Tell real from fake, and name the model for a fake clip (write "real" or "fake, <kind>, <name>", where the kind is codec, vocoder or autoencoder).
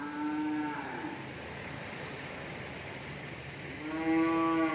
real